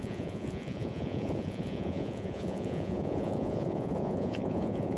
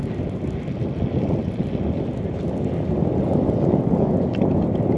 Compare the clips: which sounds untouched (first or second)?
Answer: second